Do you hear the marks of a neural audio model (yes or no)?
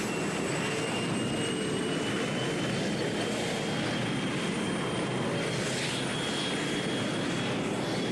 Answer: no